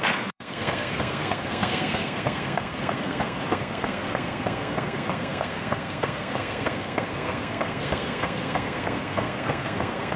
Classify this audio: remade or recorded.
remade